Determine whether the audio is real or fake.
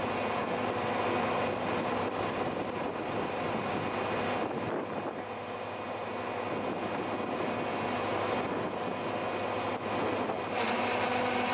real